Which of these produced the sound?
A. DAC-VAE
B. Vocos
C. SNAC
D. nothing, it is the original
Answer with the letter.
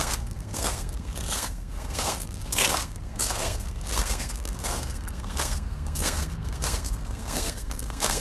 C